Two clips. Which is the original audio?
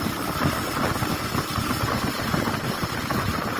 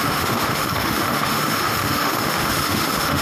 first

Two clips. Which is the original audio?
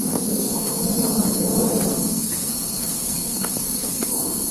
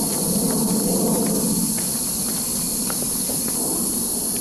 second